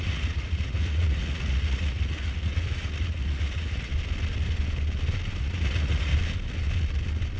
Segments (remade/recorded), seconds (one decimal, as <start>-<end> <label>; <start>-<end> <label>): 0.0-3.9 remade; 3.9-5.4 recorded; 5.4-6.1 remade; 6.1-7.4 recorded